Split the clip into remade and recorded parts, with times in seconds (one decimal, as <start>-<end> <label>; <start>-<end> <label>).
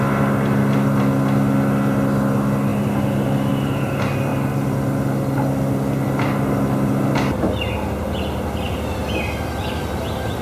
0.0-10.4 recorded